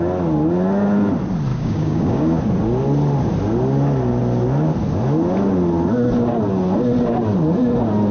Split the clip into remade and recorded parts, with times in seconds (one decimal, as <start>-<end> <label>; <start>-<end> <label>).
0.0-1.5 recorded; 1.5-2.4 remade; 2.4-8.1 recorded